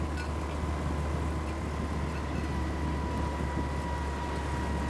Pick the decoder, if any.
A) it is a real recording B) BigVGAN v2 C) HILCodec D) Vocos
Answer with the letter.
A